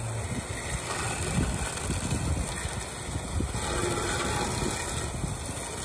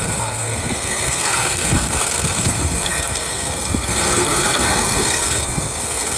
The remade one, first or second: second